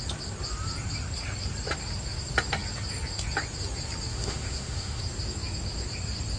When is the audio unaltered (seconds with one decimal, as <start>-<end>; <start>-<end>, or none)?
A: 0.0-4.1; 5.0-6.4